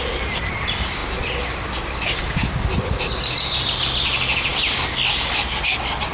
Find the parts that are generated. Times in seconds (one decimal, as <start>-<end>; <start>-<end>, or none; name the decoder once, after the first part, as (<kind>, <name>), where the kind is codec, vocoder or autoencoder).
none